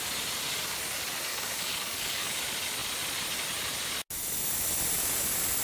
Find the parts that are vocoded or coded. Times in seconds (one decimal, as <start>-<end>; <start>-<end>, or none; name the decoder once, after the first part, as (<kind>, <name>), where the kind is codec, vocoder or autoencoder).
1.3-2.4 (codec, DAC)